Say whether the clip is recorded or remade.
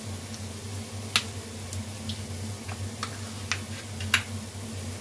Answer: recorded